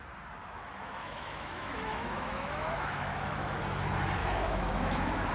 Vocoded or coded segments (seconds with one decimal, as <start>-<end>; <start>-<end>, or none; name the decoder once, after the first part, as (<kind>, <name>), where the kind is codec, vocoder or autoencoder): 0.4-3.6 (autoencoder, DAC-VAE); 4.2-5.3